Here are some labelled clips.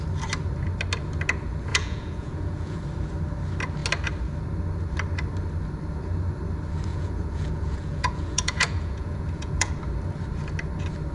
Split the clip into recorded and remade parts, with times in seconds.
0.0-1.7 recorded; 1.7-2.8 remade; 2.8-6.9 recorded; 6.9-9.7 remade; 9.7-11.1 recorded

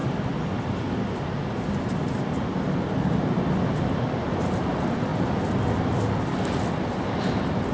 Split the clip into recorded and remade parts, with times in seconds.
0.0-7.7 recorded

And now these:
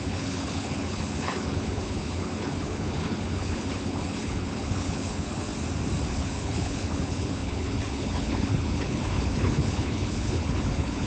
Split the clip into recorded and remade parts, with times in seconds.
0.0-5.5 remade; 5.5-6.1 recorded; 6.1-11.1 remade

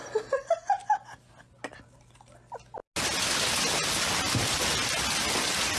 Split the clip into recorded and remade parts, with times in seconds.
0.0-5.8 recorded